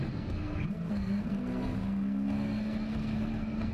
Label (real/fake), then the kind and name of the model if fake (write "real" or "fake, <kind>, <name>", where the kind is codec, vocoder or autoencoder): fake, codec, SNAC